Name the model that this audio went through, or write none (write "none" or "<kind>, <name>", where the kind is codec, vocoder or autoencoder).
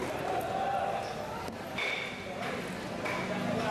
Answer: none